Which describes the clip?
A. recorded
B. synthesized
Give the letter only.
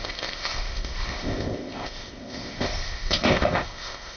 B